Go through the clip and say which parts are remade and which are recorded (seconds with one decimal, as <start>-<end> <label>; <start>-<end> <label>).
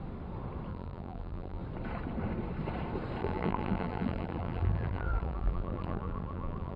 0.0-0.7 recorded; 0.7-1.6 remade; 1.6-3.2 recorded; 3.2-6.8 remade